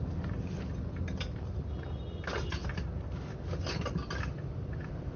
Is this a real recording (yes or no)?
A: yes